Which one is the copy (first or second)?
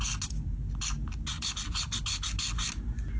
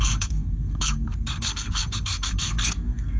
second